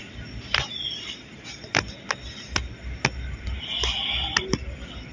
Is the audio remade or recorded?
recorded